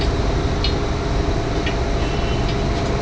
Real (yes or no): yes